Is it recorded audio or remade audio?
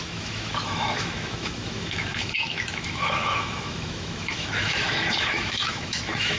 remade